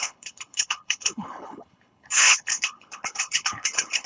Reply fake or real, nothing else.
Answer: fake